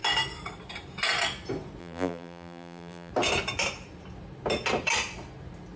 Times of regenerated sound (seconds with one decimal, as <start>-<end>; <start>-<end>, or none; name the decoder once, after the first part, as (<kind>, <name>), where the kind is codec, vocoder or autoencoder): 1.8-3.1 (vocoder, BigVGAN v2)